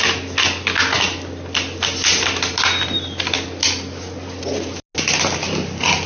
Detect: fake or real real